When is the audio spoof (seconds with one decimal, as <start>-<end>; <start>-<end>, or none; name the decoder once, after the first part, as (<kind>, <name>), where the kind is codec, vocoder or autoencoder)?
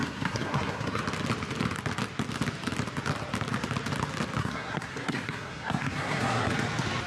0.0-1.0 (codec, SNAC); 4.4-6.5